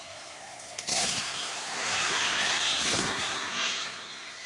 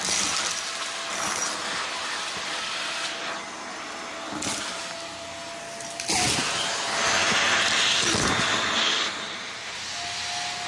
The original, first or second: second